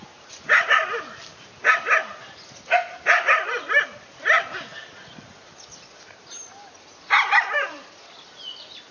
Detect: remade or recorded recorded